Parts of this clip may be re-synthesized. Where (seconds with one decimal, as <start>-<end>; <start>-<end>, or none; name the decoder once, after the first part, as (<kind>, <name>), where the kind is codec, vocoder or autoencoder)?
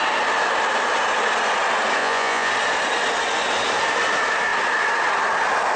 2.0-2.5 (vocoder, Vocos)